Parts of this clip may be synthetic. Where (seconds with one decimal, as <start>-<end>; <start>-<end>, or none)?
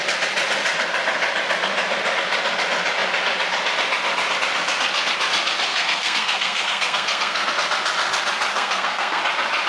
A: 5.7-7.5; 8.5-9.2